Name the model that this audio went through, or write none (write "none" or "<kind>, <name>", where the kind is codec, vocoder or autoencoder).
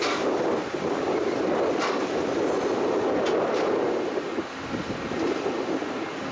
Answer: none